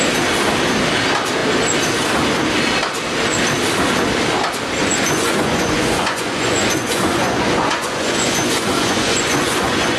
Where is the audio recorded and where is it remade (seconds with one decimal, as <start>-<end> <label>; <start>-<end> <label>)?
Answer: 0.0-4.8 recorded; 4.8-10.0 remade